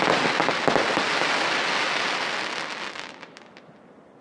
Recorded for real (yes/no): yes